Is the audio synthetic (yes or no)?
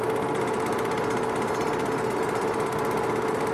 no